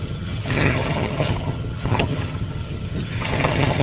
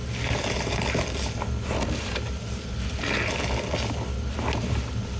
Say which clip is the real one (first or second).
second